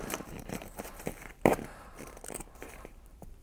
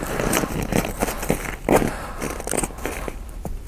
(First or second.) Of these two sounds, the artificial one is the first